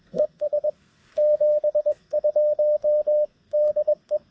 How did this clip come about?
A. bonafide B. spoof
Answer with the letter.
B